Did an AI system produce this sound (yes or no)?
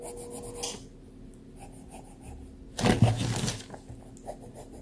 no